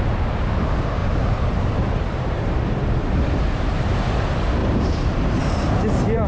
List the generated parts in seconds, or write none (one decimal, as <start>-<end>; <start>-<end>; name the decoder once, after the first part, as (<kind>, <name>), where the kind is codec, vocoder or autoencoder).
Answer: 1.0-3.9 (vocoder, BigVGAN v2); 4.6-5.4